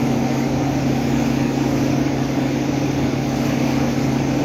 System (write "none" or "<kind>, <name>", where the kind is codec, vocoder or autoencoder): codec, DAC